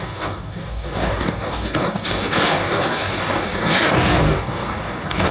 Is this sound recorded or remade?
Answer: remade